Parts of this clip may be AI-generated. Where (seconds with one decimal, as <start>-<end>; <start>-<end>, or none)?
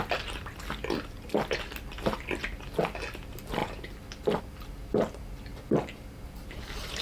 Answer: none